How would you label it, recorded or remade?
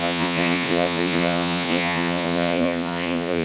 remade